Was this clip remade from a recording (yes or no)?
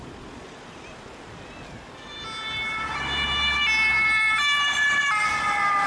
no